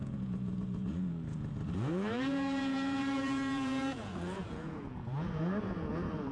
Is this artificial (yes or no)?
yes